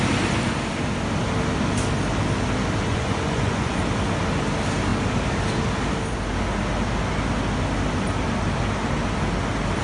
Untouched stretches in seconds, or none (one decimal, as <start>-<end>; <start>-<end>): 0.0-2.9; 3.8-9.8